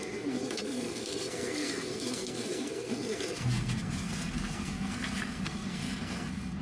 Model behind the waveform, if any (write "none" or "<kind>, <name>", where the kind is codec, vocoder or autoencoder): codec, SNAC